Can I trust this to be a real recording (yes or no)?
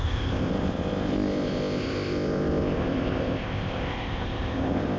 no